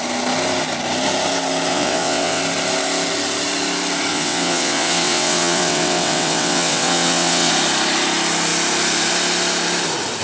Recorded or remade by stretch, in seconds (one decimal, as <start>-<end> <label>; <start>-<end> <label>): 0.0-1.7 recorded; 1.7-2.4 remade; 2.4-4.1 recorded; 4.1-7.5 remade; 7.5-10.2 recorded